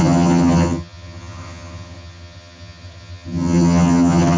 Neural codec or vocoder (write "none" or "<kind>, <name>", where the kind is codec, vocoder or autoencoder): vocoder, HiFi-GAN